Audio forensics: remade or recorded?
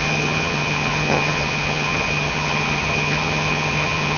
remade